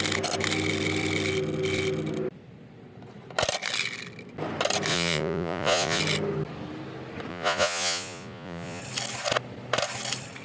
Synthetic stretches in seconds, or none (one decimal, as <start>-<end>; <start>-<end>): 4.9-6.0; 7.3-8.8